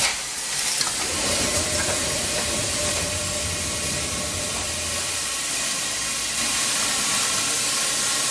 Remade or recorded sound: remade